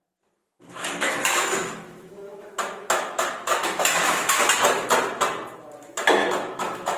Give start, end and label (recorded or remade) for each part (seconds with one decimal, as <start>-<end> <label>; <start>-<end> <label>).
0.0-0.4 recorded; 0.4-4.6 remade; 4.6-6.2 recorded; 6.2-7.0 remade